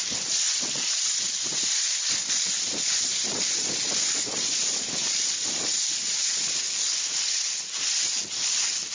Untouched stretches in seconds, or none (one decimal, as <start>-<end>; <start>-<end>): 0.0-8.9